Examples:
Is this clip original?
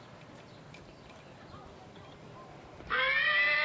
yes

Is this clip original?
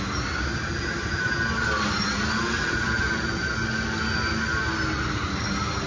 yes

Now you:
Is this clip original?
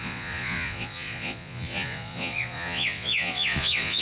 no